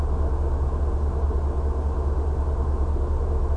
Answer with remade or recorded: recorded